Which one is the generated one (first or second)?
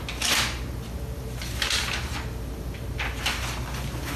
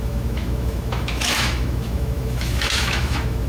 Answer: second